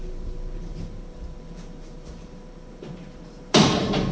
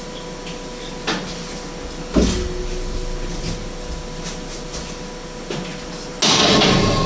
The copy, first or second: first